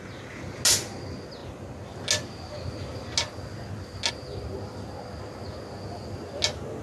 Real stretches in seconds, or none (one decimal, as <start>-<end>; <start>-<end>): 0.0-6.8